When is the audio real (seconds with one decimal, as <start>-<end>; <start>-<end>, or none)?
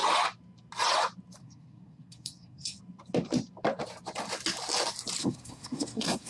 0.0-1.4; 2.8-5.2